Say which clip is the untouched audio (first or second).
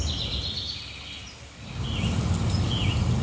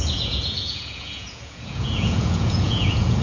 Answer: first